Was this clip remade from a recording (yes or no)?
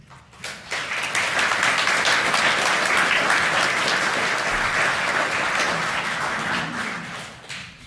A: no